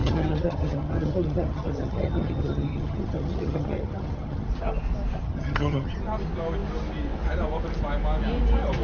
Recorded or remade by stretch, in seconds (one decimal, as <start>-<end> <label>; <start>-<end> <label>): 0.0-4.5 remade; 4.5-5.2 recorded; 5.2-6.0 remade; 6.0-8.8 recorded